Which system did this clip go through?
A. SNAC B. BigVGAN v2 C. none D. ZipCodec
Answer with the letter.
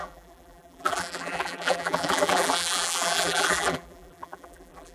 B